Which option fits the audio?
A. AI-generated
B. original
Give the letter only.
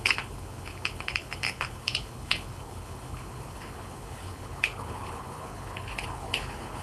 A